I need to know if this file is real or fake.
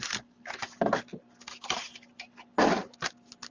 real